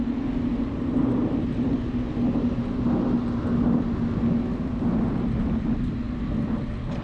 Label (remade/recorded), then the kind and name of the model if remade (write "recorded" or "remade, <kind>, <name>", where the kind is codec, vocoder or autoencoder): recorded